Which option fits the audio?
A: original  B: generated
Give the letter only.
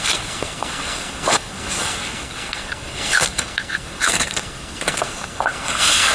B